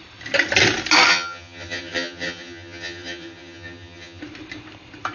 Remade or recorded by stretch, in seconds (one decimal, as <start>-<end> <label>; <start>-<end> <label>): 0.0-1.1 recorded; 1.1-4.2 remade; 4.2-5.1 recorded